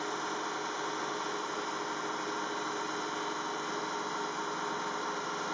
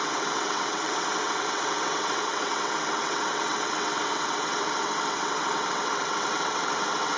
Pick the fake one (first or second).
second